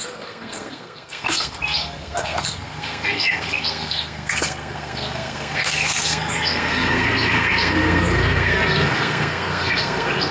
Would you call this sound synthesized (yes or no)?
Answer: yes